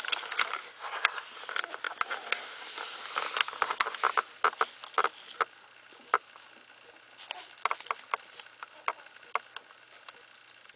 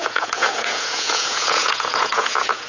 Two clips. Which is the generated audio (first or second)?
second